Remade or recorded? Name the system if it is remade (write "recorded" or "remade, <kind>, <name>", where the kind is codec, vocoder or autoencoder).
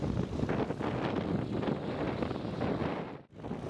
recorded